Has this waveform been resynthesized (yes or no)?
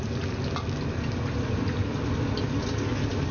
no